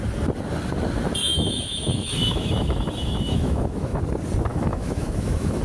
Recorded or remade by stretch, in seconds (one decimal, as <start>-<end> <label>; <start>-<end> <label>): 0.0-1.2 recorded; 1.2-4.0 remade; 4.0-4.5 recorded; 4.5-5.6 remade